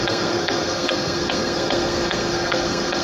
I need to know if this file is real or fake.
fake